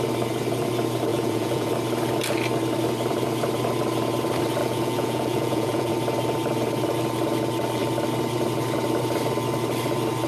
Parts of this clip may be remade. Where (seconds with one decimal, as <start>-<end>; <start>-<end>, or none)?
1.1-1.7; 4.6-5.9